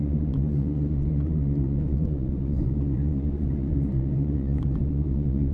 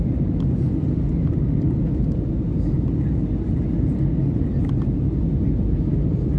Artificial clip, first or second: first